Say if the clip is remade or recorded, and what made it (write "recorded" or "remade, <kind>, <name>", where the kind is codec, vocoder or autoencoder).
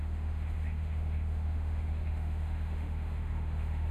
remade, autoencoder, DAC-VAE